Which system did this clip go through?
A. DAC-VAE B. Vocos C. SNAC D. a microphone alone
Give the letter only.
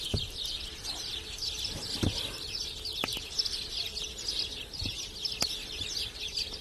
D